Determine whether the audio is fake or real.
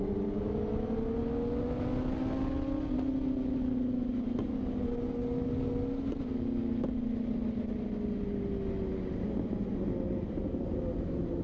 real